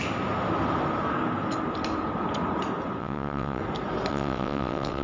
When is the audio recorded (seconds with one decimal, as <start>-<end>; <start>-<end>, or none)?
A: 0.0-3.0; 3.6-4.1